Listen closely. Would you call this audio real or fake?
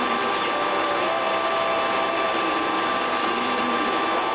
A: real